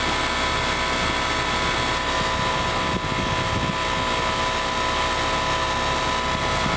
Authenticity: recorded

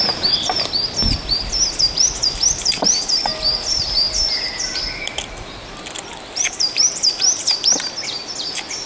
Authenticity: recorded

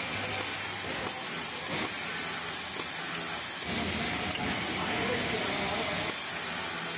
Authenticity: recorded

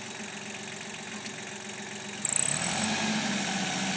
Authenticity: recorded